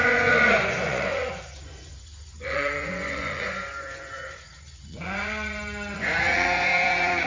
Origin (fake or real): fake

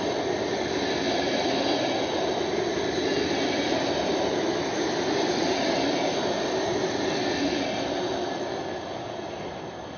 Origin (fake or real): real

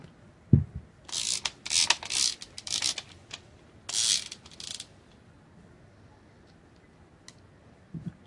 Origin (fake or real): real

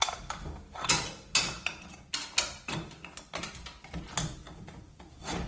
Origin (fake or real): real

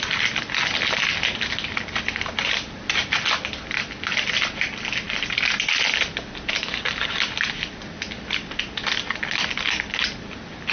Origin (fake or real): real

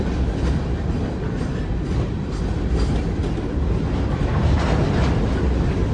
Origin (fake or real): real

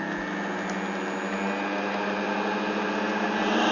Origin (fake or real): real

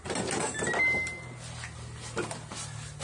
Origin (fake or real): real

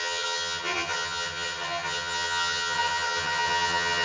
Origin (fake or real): fake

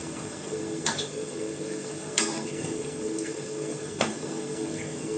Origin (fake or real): fake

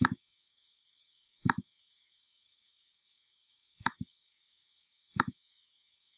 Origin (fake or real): fake